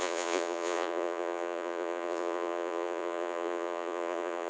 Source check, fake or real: fake